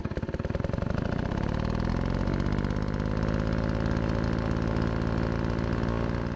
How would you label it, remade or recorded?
recorded